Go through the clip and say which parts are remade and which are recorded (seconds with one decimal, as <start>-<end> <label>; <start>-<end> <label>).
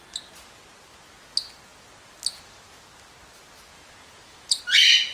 0.0-3.7 recorded; 3.7-4.6 remade; 4.6-5.1 recorded